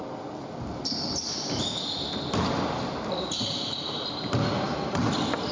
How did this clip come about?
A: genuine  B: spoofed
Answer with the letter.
A